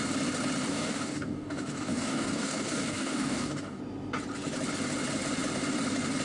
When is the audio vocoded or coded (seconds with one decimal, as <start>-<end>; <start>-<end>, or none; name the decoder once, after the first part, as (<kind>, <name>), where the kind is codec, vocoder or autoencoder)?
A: 0.7-3.8 (codec, DAC)